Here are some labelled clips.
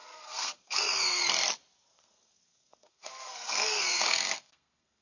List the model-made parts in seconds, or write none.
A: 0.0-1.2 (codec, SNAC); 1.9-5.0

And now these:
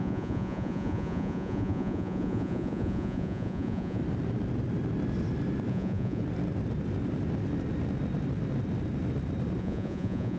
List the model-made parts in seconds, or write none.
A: 0.0-4.0 (vocoder, Vocos); 5.7-6.2; 9.6-10.4

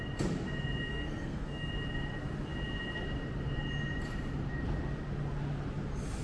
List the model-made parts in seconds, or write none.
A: 0.9-1.7 (codec, SNAC)

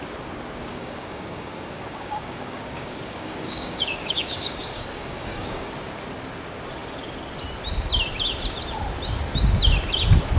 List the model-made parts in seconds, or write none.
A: 0.7-5.7 (codec, DAC)